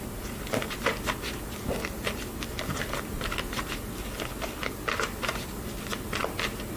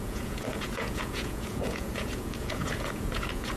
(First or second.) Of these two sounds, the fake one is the second